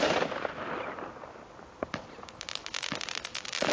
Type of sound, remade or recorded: remade